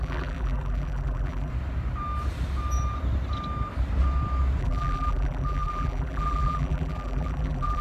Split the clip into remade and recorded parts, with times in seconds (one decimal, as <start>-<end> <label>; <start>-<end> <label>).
0.0-1.5 remade; 1.5-4.6 recorded; 4.6-7.8 remade